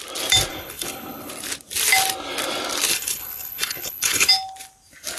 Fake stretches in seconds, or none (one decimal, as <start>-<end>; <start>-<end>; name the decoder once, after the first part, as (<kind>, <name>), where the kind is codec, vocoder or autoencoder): 0.5-1.3 (codec, HILCodec); 2.9-4.3